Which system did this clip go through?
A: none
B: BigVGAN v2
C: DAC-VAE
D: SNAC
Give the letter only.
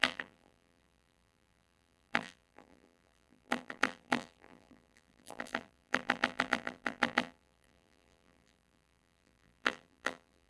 B